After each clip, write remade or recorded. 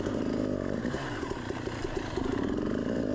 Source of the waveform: remade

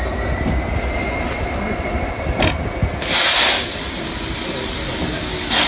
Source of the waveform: recorded